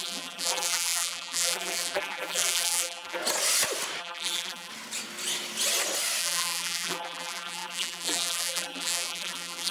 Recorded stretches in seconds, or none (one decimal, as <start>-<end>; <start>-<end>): 3.2-4.0; 4.7-6.2